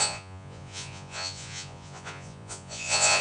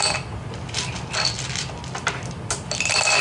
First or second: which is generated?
first